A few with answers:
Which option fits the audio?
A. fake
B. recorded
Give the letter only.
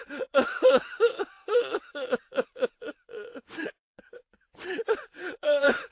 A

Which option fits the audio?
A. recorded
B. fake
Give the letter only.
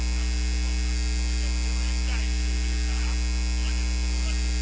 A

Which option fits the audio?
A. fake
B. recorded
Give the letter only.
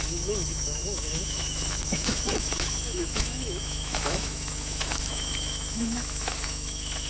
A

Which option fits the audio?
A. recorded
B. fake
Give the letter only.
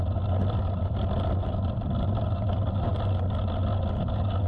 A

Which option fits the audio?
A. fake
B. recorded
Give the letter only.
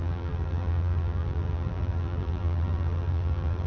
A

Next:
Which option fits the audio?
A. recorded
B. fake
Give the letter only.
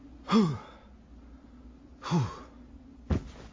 A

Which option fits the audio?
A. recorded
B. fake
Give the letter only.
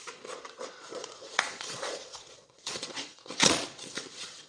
B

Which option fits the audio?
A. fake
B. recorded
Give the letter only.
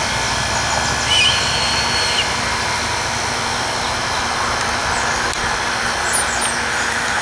B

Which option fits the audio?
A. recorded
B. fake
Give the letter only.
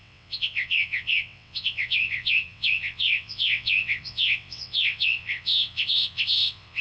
B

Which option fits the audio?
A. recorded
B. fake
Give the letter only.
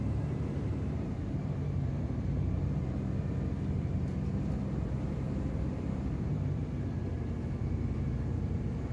B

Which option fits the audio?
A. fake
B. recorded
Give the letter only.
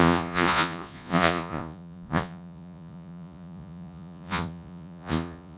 A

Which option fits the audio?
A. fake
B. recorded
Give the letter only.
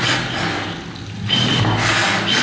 B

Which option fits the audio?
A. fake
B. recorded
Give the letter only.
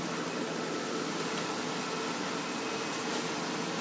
B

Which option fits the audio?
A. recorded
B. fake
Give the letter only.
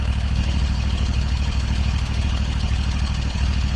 B